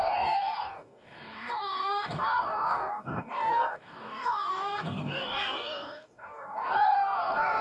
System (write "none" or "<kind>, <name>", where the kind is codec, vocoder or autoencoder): codec, DAC